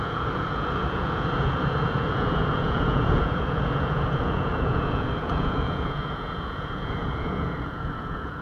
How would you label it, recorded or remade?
remade